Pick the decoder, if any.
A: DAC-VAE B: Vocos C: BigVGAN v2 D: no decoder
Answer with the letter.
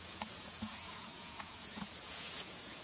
B